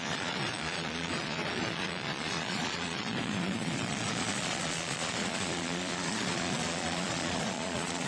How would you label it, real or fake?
fake